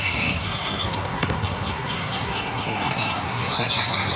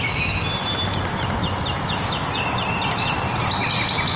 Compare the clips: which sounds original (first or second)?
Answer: second